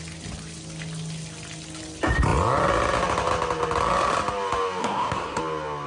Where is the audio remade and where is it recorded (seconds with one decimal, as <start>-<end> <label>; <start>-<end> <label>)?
0.0-4.8 recorded; 4.8-5.4 remade; 5.4-5.9 recorded